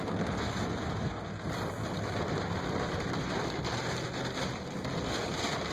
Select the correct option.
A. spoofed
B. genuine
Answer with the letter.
A